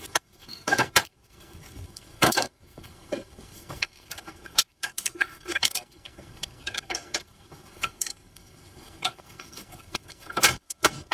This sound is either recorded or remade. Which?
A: remade